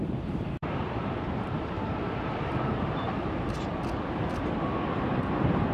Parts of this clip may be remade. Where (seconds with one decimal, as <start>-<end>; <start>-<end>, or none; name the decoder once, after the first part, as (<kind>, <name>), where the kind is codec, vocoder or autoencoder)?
0.0-3.7 (vocoder, BigVGAN v2)